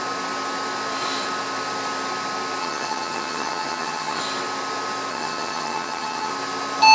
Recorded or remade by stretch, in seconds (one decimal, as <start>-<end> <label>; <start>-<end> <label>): 0.0-2.6 recorded; 2.6-4.2 remade; 4.2-5.1 recorded; 5.1-6.3 remade; 6.3-6.9 recorded